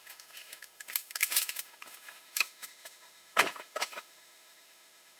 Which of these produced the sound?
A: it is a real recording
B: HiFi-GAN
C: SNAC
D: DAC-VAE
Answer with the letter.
D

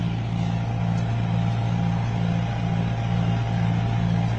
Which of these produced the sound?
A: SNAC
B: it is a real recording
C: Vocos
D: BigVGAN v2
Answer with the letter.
B